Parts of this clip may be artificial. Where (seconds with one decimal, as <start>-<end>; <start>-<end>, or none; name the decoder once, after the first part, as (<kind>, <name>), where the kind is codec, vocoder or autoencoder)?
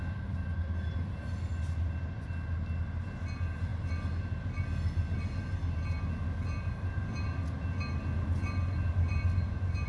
none